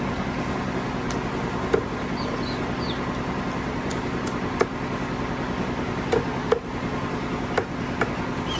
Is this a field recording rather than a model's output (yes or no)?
yes